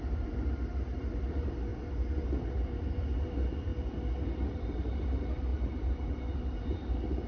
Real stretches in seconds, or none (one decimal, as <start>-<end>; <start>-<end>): 1.7-2.5; 3.7-4.2